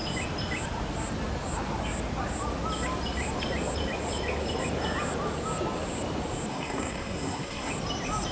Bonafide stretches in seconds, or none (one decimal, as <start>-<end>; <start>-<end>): 0.0-6.5; 7.7-8.3